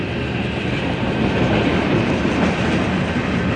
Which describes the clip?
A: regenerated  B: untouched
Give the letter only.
B